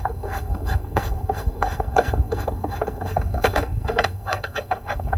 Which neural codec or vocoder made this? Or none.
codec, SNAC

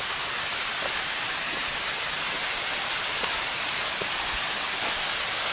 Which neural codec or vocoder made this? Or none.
none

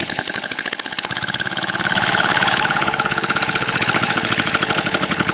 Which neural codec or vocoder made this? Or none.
codec, HILCodec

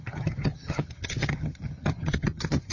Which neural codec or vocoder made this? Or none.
vocoder, HiFi-GAN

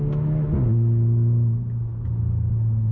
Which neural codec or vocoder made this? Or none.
none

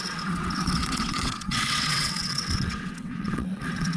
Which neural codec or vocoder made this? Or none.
vocoder, WaveNeXt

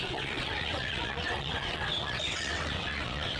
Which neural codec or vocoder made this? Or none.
vocoder, WaveNeXt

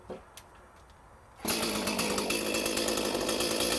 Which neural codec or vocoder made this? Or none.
none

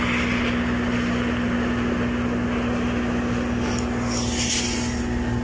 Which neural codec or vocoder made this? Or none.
none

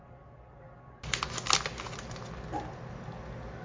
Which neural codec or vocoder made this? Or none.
none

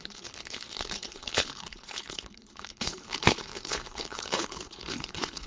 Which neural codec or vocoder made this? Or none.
codec, HILCodec